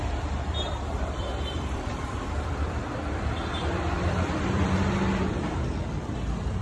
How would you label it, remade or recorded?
remade